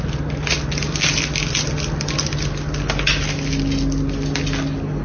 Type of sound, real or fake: real